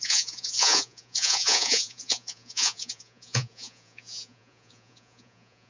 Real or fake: fake